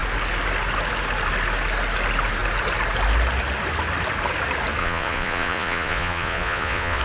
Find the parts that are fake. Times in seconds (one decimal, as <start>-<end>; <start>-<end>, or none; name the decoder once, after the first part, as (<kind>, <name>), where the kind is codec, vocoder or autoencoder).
4.8-7.0 (vocoder, Vocos)